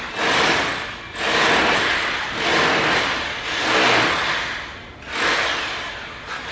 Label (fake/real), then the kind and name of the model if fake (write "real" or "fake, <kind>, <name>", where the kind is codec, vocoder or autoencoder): real